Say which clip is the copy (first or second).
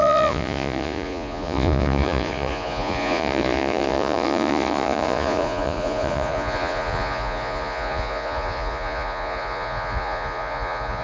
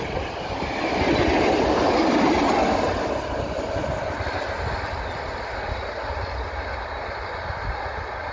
first